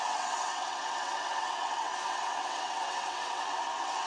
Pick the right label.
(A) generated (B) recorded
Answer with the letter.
A